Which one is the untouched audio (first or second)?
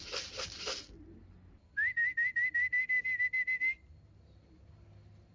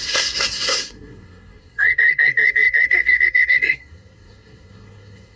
first